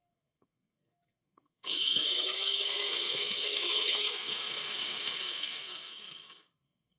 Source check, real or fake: fake